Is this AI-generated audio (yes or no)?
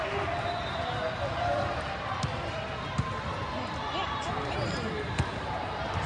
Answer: no